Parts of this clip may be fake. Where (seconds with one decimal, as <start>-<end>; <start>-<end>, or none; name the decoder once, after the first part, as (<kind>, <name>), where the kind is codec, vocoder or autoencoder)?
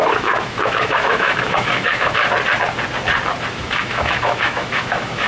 0.0-2.2 (autoencoder, DAC-VAE); 3.5-5.3